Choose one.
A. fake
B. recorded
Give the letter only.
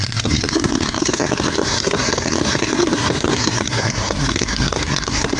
A